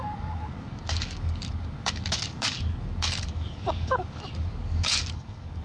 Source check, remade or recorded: remade